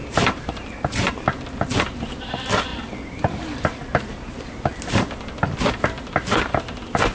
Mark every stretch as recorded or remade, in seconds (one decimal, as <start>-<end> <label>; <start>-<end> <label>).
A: 0.0-1.1 remade; 1.1-7.1 recorded